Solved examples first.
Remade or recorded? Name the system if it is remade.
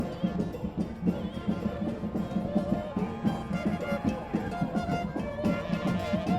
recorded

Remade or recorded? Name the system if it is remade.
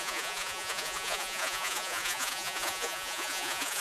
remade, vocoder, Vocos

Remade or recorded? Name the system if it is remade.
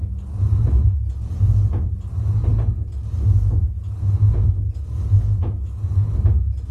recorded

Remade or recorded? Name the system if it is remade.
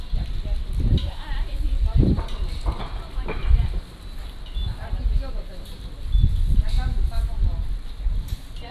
recorded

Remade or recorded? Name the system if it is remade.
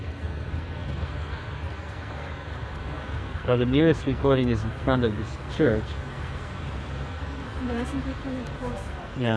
remade, codec, SNAC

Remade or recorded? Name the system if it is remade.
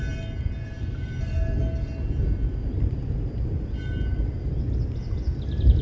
recorded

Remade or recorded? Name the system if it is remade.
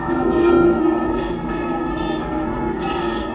remade, codec, SNAC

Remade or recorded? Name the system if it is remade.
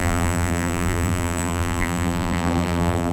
remade, vocoder, BigVGAN v2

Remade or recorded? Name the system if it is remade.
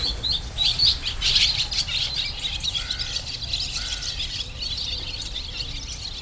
recorded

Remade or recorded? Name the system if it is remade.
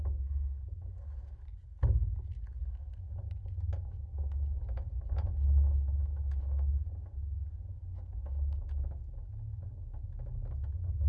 recorded